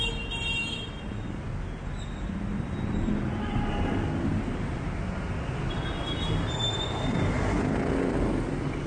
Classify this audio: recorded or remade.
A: recorded